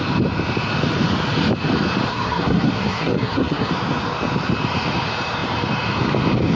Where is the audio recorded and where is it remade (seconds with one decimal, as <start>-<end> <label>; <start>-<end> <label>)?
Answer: 0.0-2.1 recorded; 2.1-3.7 remade; 3.7-6.6 recorded